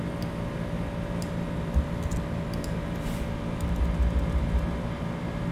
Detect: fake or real real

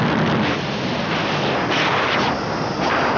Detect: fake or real fake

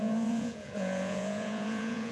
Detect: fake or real fake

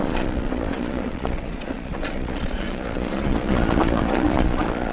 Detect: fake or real fake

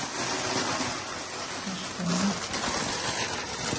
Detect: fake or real real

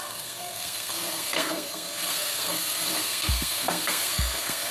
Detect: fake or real fake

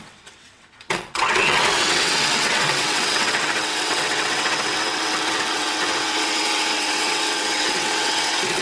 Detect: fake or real fake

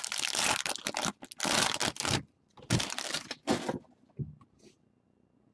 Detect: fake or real real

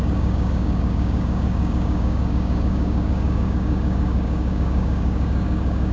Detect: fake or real fake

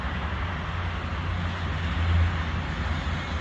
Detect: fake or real real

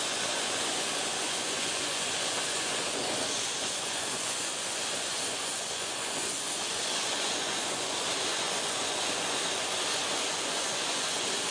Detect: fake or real fake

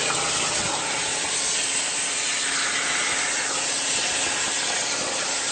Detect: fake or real real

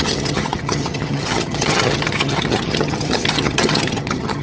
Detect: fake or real fake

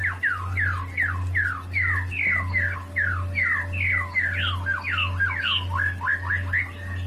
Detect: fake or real real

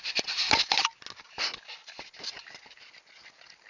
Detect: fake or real real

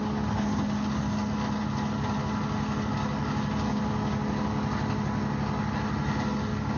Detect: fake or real real